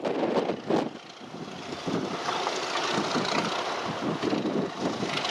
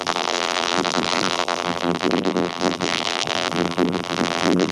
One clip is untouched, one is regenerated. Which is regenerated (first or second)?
second